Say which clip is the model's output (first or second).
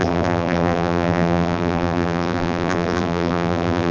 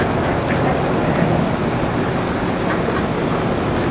first